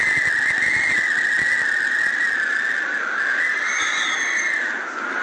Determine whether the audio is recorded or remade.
recorded